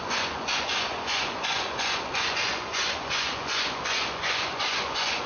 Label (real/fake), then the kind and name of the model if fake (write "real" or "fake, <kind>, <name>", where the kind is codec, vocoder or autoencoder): fake, vocoder, Vocos